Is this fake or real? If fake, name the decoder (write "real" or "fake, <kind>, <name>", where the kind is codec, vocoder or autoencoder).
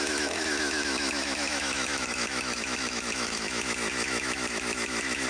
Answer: fake, autoencoder, DAC-VAE